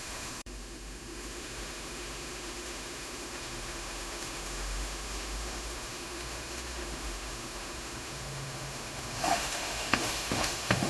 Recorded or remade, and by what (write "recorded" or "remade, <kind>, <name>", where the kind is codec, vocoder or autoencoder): remade, autoencoder, DAC-VAE